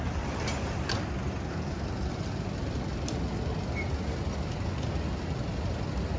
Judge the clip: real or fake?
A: real